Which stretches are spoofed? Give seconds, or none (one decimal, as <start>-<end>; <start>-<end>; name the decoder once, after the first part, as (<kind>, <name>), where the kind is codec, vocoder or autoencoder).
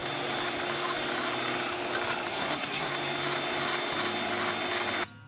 2.3-2.9 (codec, SNAC)